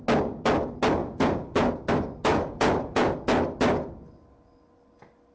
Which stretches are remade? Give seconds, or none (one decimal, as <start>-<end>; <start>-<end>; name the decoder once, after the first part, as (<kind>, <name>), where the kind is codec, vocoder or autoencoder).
1.0-1.7 (vocoder, Vocos); 2.3-3.1